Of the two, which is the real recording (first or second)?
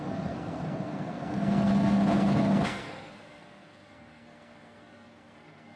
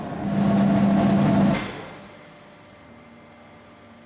second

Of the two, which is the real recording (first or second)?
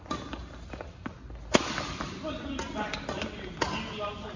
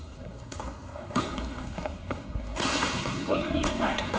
first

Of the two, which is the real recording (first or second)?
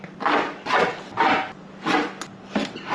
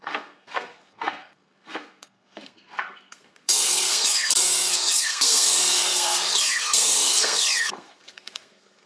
first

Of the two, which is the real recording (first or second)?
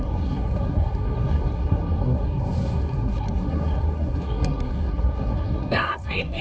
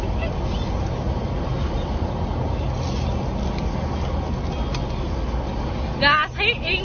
second